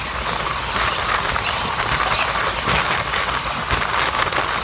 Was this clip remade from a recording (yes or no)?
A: no